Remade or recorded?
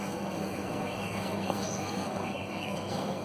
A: remade